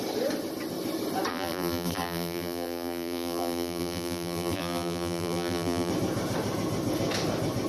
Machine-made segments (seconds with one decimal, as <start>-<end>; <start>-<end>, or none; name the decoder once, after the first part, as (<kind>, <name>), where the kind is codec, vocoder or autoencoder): 1.3-5.9 (vocoder, BigVGAN v2)